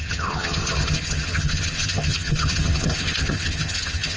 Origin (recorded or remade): remade